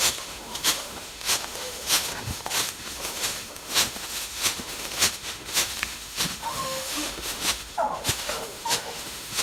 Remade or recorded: remade